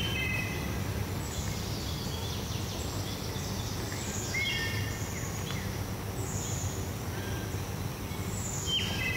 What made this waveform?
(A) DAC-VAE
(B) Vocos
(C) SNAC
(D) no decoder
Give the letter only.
D